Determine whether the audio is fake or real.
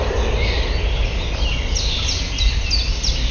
real